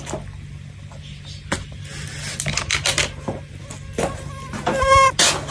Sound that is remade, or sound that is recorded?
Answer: recorded